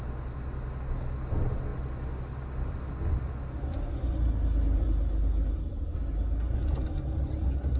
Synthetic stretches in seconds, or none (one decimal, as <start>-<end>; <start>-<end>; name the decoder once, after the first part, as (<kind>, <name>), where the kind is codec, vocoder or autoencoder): none